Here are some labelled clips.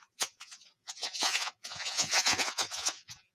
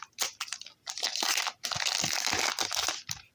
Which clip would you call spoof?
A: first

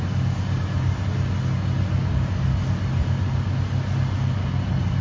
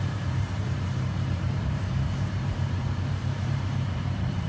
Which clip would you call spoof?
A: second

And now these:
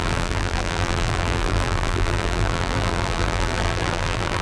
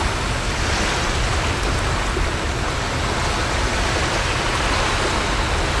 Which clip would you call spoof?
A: first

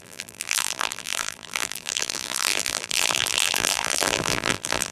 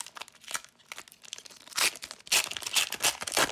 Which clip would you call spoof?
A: first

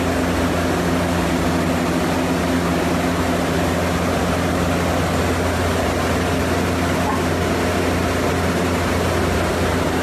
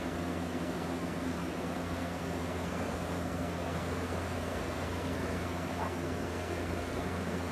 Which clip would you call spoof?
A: second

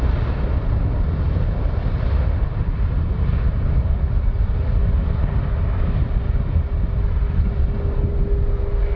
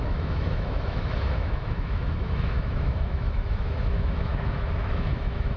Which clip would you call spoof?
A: second